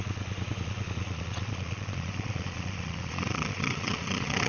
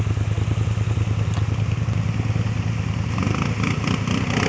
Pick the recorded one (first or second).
second